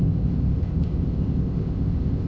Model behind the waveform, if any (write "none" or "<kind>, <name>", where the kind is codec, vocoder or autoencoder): codec, ZipCodec